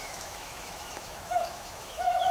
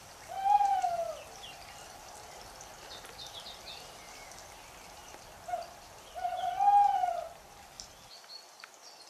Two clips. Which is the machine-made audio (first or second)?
first